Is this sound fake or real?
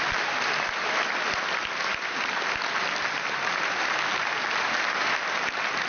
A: real